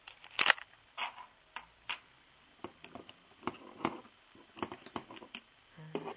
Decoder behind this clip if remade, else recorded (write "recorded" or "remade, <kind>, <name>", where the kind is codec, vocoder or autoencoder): recorded